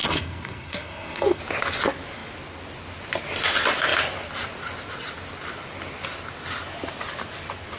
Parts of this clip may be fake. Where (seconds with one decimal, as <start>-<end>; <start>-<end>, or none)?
0.0-1.4